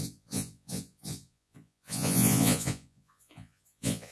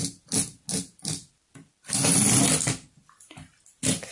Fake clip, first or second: first